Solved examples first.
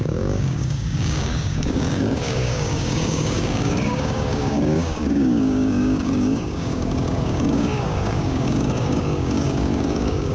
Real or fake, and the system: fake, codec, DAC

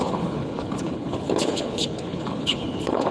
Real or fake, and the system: fake, codec, HILCodec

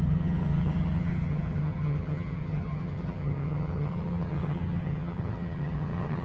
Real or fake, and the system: fake, vocoder, HiFi-GAN